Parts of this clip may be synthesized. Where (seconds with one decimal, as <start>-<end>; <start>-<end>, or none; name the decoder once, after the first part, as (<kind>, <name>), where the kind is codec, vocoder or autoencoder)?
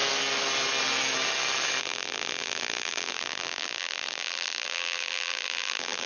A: 1.8-6.1 (vocoder, BigVGAN v2)